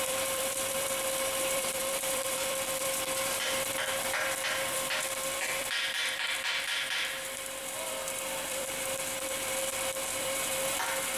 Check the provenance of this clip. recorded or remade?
remade